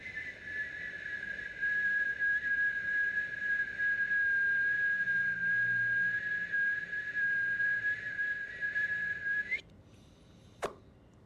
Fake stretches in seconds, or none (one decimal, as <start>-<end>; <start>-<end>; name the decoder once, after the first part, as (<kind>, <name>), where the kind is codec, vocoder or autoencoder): 0.0-3.8 (vocoder, BigVGAN v2); 4.9-5.4; 6.8-11.3